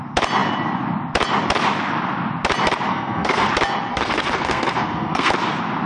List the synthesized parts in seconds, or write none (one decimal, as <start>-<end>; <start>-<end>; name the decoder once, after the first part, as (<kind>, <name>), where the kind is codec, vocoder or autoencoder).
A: 2.9-3.5 (codec, SNAC); 3.9-5.3